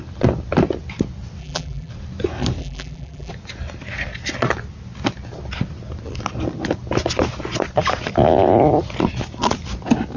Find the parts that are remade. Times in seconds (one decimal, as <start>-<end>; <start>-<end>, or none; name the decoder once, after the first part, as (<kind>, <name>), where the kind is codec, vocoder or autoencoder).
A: 1.4-1.9 (vocoder, BigVGAN v2); 2.6-3.3